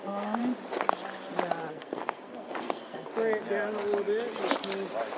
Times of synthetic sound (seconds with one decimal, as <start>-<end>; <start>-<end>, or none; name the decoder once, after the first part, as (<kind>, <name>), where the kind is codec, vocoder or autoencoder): 0.0-0.4 (codec, SNAC); 1.7-3.1